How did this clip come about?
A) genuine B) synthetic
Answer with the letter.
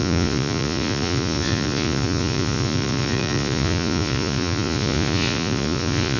B